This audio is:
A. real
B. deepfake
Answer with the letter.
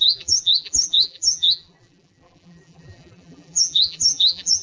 B